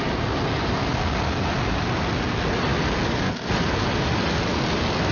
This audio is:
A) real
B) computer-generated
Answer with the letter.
A